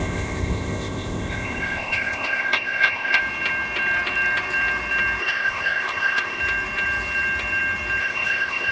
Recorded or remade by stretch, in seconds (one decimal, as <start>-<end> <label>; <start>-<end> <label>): 0.0-3.2 remade; 3.2-5.2 recorded; 5.2-6.4 remade; 6.4-8.0 recorded; 8.0-8.7 remade